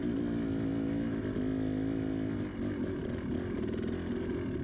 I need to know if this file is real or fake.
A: real